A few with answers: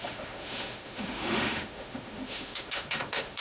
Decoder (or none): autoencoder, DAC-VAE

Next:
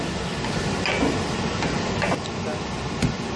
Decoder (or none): none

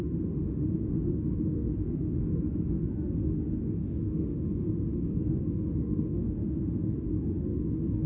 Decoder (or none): autoencoder, DAC-VAE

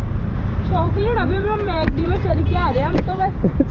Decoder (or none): vocoder, BigVGAN v2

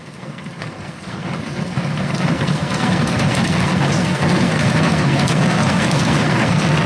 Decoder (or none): codec, SNAC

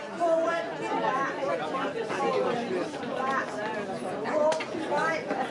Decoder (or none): none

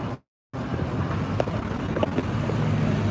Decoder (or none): none